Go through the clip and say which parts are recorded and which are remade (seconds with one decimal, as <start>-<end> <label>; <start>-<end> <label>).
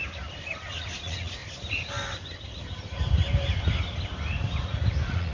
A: 0.0-0.8 recorded; 0.8-1.4 remade; 1.4-4.6 recorded; 4.6-5.3 remade